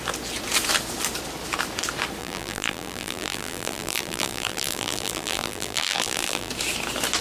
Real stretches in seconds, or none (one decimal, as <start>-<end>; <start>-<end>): 0.0-2.2; 6.5-7.2